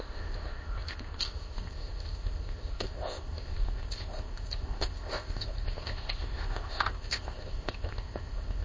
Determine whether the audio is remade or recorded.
remade